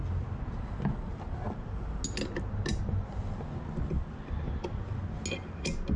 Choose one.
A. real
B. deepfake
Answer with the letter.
A